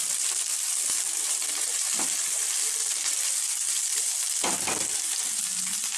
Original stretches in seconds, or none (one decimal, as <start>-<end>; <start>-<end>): 0.0-0.5; 4.1-6.0